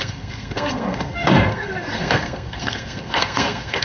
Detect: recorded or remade remade